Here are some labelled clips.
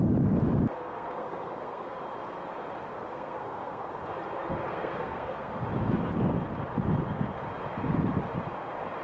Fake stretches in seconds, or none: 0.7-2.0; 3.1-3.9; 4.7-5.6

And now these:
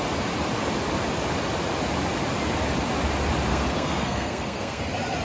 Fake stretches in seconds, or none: 3.5-4.8

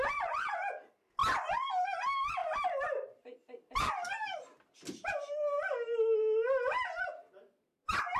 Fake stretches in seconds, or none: none

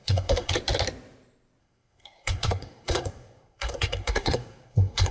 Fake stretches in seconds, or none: 0.0-0.5; 1.6-5.1

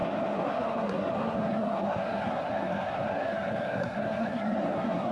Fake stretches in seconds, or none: 0.0-5.1

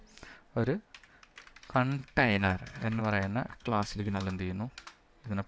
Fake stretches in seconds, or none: 2.0-3.0; 3.5-4.2

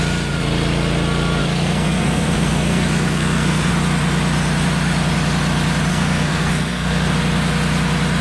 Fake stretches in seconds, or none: 1.4-3.7; 5.9-7.1

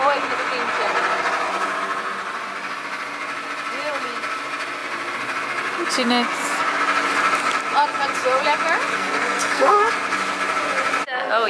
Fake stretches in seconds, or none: 8.9-9.9